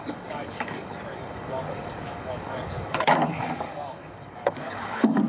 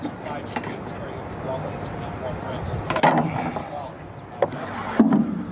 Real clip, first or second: second